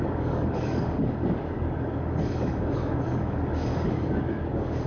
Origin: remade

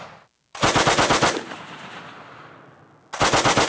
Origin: recorded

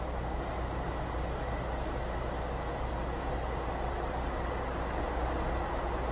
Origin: recorded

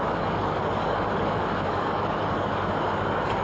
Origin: remade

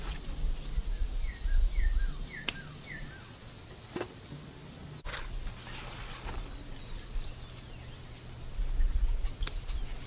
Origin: recorded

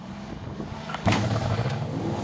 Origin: remade